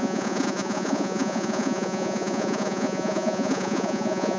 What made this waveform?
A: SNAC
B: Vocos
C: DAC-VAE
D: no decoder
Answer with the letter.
B